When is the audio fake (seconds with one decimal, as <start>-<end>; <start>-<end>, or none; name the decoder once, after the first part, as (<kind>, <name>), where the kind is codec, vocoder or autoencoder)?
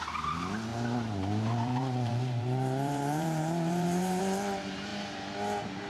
0.7-4.2 (vocoder, BigVGAN v2)